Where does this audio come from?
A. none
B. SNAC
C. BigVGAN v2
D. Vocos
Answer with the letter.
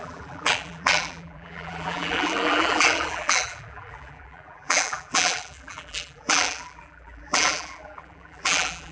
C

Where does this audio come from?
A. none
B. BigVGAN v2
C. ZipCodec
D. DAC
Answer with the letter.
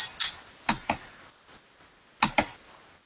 A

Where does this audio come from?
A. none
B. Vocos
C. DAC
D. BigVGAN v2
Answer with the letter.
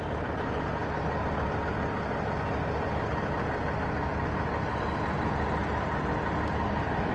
A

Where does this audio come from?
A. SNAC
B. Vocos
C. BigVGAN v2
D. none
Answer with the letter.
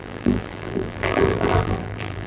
C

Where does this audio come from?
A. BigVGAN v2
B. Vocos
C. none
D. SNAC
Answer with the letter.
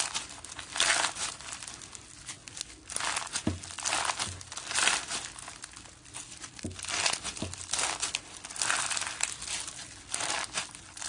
C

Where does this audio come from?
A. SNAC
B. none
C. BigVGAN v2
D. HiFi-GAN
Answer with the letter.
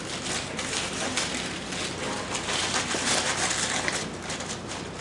B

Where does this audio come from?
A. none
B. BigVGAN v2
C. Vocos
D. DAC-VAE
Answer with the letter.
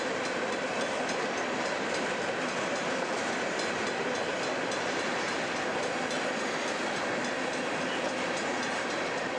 B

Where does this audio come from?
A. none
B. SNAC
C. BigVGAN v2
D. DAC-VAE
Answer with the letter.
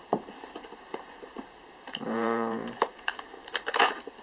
C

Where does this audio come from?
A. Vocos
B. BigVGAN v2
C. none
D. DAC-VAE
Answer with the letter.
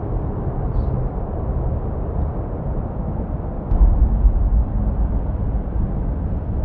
C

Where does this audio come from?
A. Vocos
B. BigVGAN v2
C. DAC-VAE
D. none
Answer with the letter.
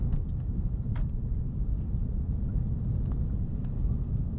B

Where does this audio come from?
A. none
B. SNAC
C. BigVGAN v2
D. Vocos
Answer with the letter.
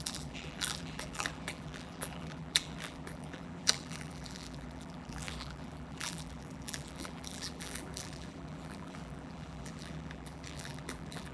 C